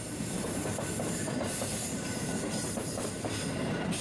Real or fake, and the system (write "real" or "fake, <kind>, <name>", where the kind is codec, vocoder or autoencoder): fake, vocoder, BigVGAN v2